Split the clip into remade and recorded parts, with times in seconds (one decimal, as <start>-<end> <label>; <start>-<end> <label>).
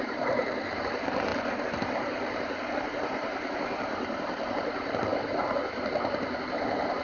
0.0-5.1 remade; 5.1-5.7 recorded; 5.7-7.0 remade